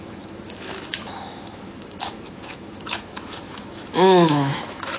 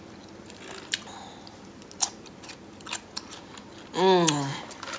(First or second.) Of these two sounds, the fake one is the first